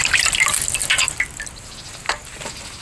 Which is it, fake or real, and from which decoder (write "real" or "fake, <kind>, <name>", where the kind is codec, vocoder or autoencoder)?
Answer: real